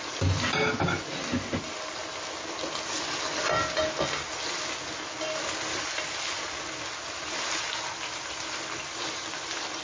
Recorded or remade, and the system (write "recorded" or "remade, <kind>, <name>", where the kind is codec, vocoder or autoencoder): recorded